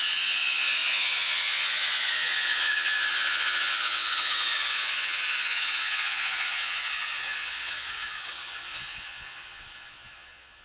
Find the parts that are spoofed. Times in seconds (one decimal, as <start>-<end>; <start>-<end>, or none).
0.0-10.6